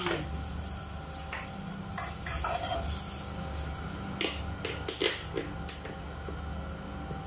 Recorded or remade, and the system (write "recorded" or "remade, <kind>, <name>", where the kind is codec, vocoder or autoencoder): recorded